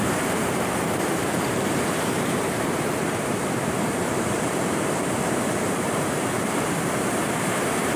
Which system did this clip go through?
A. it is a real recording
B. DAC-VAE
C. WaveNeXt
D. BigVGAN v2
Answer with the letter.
D